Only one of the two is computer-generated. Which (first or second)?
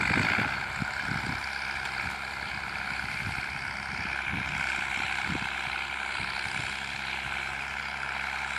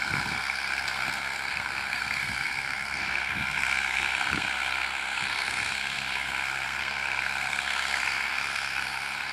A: second